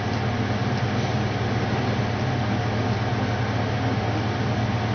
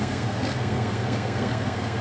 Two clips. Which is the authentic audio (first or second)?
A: first